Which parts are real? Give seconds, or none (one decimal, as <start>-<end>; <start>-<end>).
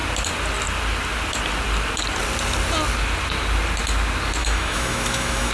0.0-4.4